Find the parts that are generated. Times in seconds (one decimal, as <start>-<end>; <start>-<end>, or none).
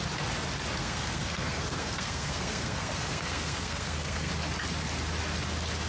0.8-4.3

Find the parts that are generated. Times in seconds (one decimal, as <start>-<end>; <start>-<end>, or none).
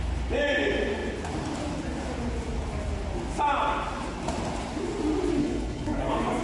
5.4-6.0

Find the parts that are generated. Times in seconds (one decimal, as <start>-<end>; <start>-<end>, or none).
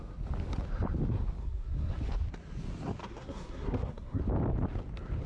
1.4-2.0; 3.0-4.2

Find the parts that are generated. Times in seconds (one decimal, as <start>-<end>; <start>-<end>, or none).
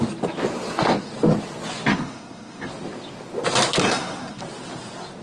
1.9-2.7; 3.8-4.4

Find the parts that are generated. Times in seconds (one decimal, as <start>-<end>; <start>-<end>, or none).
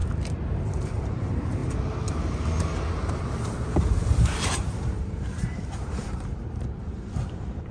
0.6-1.6; 3.1-7.7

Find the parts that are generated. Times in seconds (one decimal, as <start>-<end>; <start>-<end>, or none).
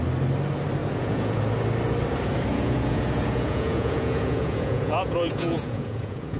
0.8-1.4; 2.5-6.4